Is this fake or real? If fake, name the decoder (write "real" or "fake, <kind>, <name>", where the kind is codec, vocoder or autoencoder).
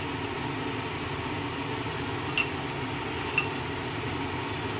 real